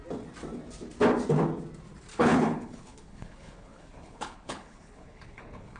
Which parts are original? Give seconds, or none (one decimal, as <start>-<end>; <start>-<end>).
0.0-2.1